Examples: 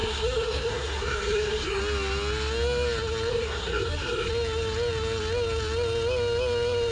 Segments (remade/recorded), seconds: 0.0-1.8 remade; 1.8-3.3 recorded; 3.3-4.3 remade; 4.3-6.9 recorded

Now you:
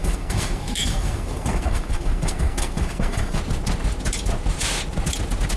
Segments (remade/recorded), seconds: 0.0-3.4 remade; 3.4-5.6 recorded

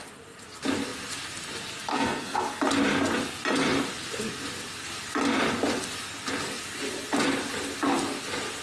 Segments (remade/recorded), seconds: 0.0-1.9 recorded; 1.9-2.6 remade; 2.6-8.6 recorded

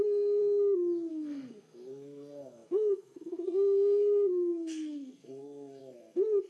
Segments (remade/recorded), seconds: 0.0-0.4 remade; 0.4-1.1 recorded; 1.1-6.5 remade

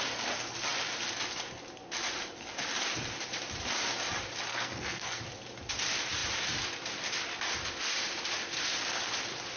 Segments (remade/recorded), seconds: 0.0-4.5 recorded; 4.5-5.2 remade; 5.2-9.6 recorded

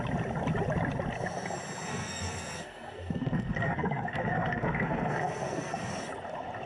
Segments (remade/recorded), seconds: 0.0-1.9 recorded; 1.9-5.9 remade; 5.9-6.7 recorded

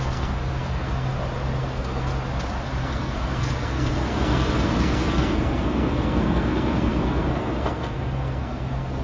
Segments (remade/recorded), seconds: 0.0-1.1 remade; 1.1-1.6 recorded; 1.6-2.1 remade; 2.1-2.8 recorded; 2.8-9.0 remade